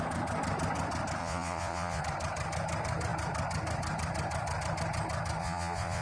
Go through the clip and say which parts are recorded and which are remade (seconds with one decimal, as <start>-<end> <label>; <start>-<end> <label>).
0.0-1.2 recorded; 1.2-2.0 remade; 2.0-5.4 recorded; 5.4-6.0 remade